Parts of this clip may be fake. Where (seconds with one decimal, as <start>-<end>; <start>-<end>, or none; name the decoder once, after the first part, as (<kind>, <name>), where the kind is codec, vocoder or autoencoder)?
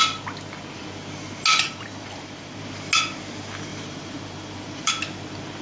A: 1.5-2.6 (vocoder, BigVGAN v2); 3.7-4.9